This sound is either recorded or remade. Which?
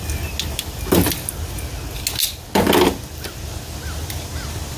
recorded